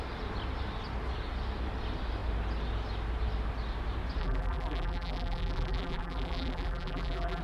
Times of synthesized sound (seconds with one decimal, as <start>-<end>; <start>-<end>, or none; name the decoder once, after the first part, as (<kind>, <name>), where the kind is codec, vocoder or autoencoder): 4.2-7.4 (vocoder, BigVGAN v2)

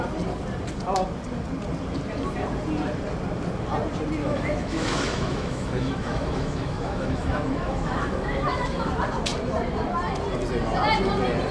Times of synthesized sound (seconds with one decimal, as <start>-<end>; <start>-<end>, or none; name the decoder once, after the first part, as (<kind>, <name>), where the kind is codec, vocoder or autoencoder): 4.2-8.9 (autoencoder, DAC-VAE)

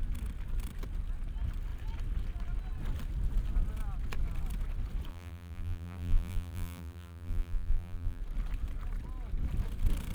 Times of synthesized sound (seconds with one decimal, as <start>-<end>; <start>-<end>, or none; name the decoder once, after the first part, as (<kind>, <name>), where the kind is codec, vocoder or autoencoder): 5.1-8.2 (vocoder, BigVGAN v2)